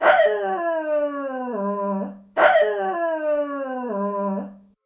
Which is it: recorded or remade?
remade